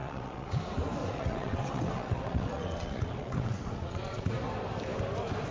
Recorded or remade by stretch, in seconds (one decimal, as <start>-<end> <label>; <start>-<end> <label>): 0.0-0.6 remade; 0.6-1.0 recorded; 1.0-4.3 remade; 4.3-5.5 recorded